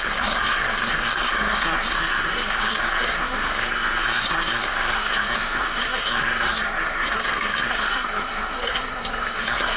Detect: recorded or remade remade